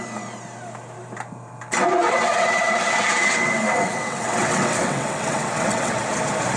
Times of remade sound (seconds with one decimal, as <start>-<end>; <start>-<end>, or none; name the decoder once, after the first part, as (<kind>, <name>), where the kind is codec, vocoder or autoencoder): 2.0-6.0 (vocoder, WaveNeXt)